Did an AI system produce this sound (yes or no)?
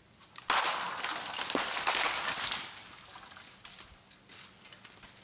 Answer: no